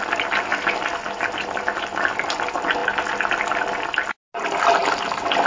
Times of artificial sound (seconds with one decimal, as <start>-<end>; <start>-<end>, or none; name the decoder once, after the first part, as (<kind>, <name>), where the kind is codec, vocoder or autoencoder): none